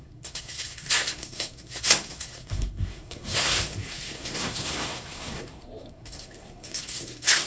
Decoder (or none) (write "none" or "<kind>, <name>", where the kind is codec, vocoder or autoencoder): codec, SNAC